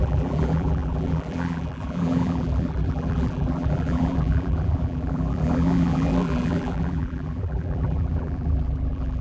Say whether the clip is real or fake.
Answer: fake